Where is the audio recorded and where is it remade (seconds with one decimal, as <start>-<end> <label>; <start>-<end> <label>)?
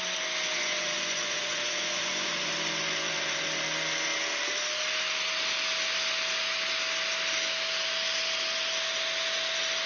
0.0-0.6 recorded; 0.6-2.5 remade; 2.5-9.9 recorded